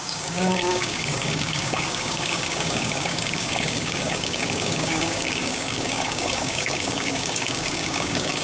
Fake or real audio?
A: fake